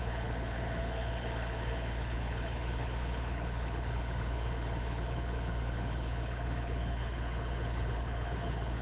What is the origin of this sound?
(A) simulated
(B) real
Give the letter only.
A